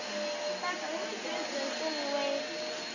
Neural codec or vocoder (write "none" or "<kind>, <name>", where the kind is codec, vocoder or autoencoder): none